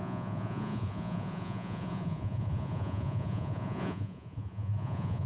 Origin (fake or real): fake